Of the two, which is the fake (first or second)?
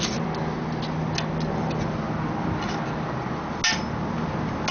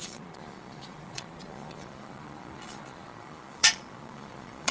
second